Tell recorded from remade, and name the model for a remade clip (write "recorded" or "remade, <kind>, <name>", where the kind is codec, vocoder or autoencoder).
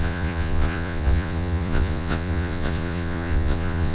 remade, vocoder, Vocos